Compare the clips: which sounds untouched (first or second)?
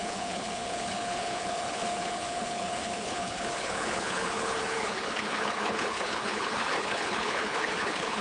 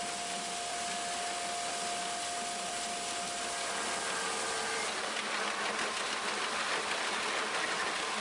second